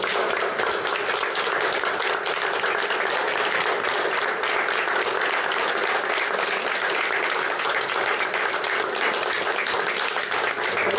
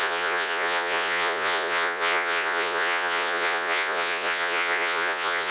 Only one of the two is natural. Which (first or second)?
first